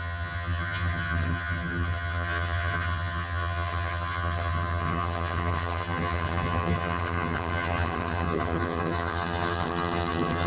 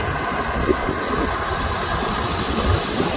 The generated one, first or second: first